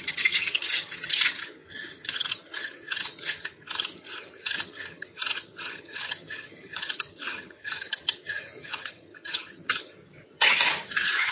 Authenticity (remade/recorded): remade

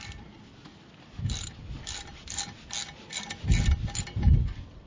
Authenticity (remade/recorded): recorded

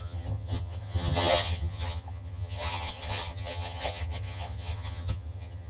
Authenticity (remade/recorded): remade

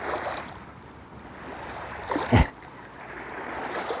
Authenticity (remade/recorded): recorded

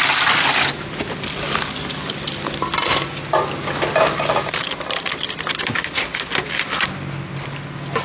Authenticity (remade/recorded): recorded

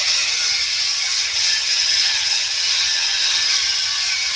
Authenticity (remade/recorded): remade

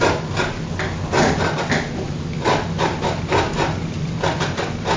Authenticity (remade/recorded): recorded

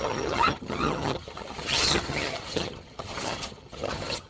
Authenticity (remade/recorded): remade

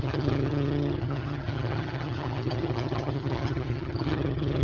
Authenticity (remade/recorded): remade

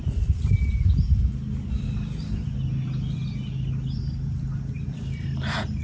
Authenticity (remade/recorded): recorded